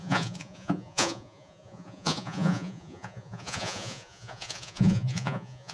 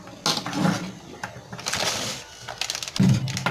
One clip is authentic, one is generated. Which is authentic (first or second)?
second